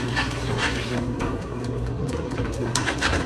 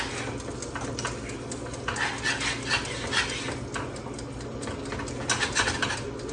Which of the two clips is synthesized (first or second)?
first